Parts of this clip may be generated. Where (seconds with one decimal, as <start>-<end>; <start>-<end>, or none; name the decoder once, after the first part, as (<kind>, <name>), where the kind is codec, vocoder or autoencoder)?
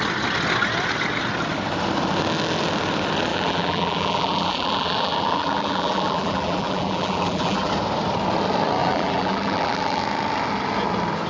3.3-7.7 (vocoder, BigVGAN v2); 8.8-10.0